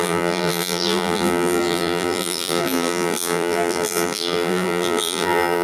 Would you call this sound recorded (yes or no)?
no